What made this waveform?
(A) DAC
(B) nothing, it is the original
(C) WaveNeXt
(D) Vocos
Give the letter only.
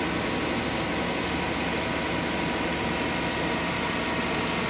B